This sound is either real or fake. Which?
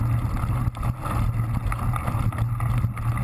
real